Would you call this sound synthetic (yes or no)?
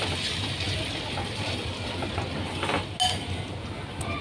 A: no